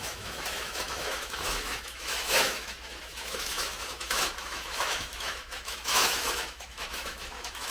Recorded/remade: remade